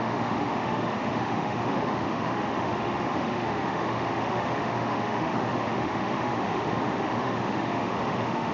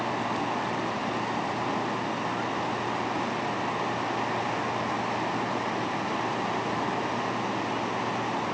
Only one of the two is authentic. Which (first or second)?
second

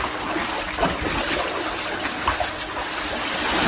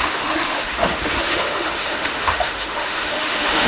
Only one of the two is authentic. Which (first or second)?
first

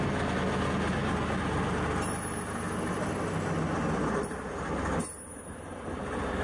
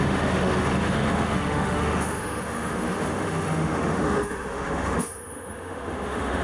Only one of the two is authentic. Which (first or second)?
first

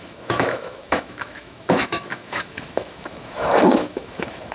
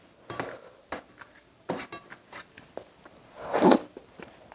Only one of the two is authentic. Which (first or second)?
second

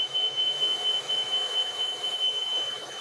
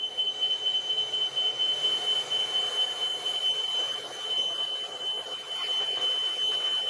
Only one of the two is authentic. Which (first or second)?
second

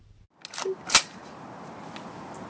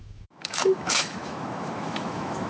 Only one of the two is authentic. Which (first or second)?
first